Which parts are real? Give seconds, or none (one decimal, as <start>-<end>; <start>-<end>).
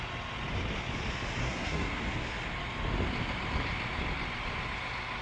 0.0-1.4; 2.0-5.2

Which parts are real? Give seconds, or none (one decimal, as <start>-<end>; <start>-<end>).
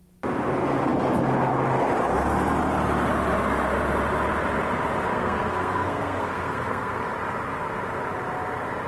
0.0-5.1; 7.0-8.9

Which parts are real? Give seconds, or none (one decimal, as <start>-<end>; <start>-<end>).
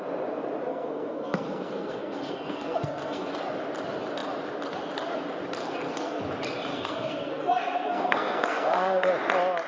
0.0-0.7; 3.3-5.6; 6.2-6.7; 9.1-9.7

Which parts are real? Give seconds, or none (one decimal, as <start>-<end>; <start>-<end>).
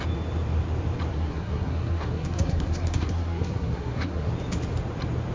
0.0-1.1; 4.3-5.3